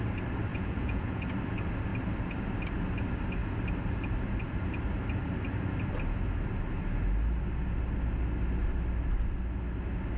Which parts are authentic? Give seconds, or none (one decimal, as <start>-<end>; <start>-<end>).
0.0-0.5; 1.2-10.2